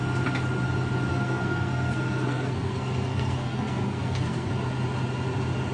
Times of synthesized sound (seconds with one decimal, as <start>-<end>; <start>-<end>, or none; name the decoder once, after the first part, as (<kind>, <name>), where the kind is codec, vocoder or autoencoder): 1.1-4.5 (codec, SNAC)